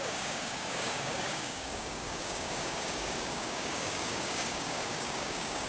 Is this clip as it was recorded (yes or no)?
no